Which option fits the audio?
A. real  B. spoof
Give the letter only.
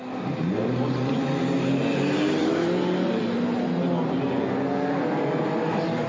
A